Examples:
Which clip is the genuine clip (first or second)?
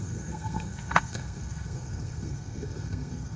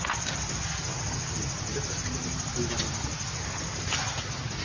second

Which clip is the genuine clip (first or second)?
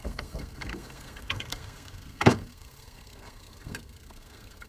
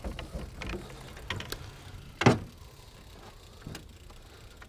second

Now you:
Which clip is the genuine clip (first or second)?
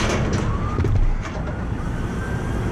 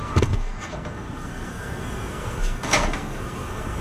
first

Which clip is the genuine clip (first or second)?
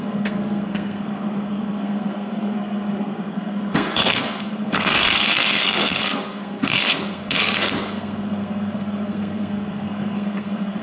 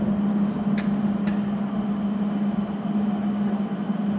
second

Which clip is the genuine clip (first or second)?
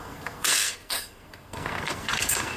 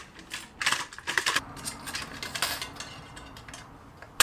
second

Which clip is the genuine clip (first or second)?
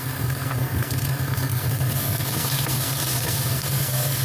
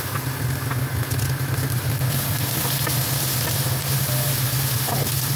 second